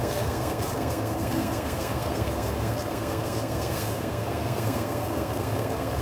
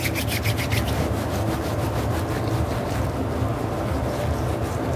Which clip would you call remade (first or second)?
first